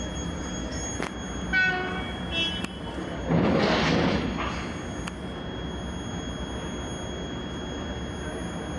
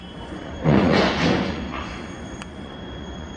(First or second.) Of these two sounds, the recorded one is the first